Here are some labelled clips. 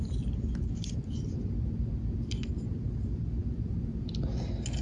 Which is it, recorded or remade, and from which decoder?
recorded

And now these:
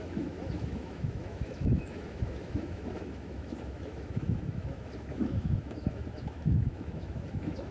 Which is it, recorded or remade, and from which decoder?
remade, autoencoder, DAC-VAE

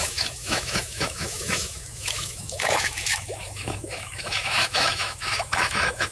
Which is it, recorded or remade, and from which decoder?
remade, autoencoder, DAC-VAE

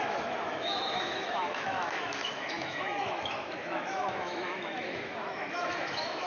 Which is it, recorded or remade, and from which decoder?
remade, autoencoder, DAC-VAE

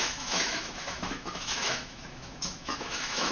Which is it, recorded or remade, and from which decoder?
remade, autoencoder, DAC-VAE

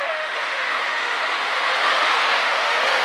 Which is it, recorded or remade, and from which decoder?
remade, autoencoder, DAC-VAE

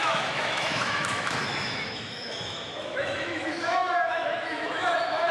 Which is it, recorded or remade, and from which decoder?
remade, autoencoder, DAC-VAE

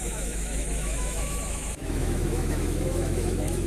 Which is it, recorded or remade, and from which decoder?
remade, autoencoder, DAC-VAE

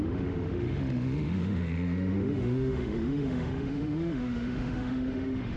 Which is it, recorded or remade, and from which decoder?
remade, autoencoder, DAC-VAE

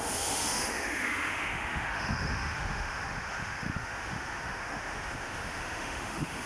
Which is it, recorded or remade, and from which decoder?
remade, autoencoder, DAC-VAE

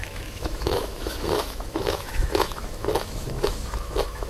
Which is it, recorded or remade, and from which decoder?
remade, autoencoder, DAC-VAE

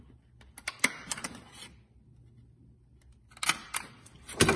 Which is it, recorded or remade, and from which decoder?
recorded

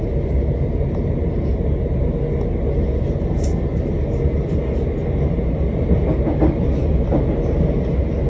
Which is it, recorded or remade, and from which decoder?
recorded